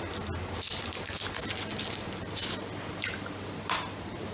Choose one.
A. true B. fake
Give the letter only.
A